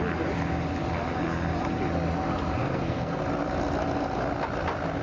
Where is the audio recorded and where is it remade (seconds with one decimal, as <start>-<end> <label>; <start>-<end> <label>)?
0.0-2.6 recorded; 2.6-3.2 remade; 3.2-5.0 recorded